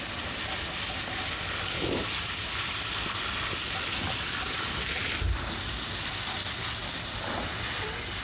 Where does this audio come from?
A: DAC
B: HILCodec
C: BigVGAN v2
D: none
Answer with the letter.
D